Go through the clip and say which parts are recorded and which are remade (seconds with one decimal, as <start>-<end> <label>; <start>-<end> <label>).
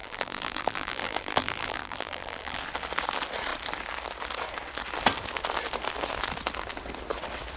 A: 0.0-2.6 remade; 2.6-7.6 recorded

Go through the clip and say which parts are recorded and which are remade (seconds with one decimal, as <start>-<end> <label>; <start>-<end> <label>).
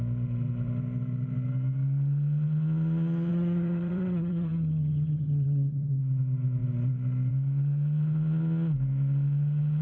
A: 0.0-3.3 recorded; 3.3-6.0 remade; 6.0-9.8 recorded